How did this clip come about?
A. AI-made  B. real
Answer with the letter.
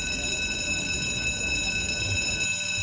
B